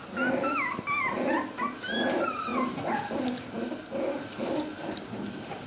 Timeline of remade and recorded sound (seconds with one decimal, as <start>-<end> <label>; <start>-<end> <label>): 0.0-5.7 recorded

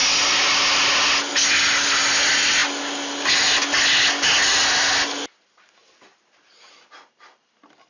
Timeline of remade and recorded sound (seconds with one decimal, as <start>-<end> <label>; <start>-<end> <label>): 0.0-7.9 recorded